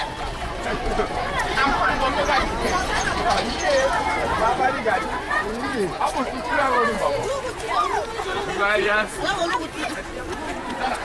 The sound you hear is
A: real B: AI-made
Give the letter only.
B